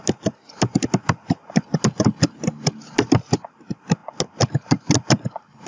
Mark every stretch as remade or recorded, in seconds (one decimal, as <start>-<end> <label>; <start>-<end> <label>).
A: 0.0-5.7 recorded